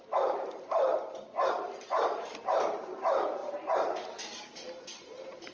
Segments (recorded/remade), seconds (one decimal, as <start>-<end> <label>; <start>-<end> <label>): 0.0-2.5 recorded; 2.5-5.5 remade